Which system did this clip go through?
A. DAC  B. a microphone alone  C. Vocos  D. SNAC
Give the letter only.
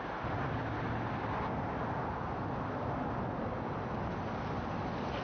B